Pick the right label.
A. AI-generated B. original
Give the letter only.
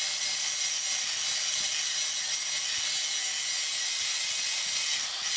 B